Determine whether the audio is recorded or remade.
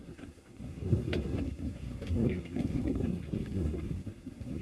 remade